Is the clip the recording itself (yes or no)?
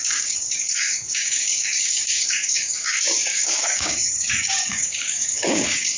no